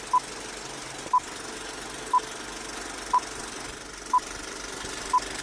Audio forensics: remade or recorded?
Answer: recorded